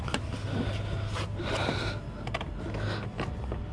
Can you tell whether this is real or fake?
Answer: real